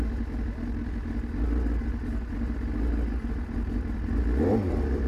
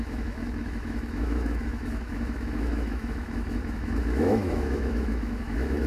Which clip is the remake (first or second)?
second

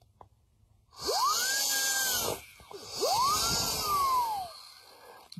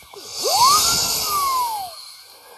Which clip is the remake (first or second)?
second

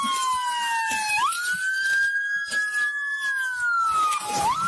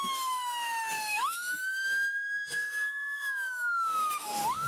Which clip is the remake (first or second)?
second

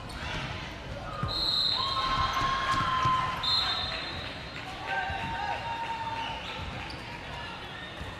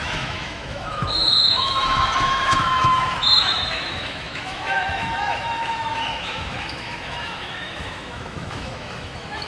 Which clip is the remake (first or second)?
second